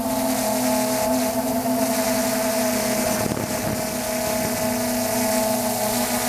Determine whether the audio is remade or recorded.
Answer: recorded